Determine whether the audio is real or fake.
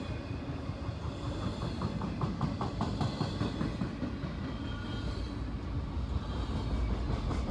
real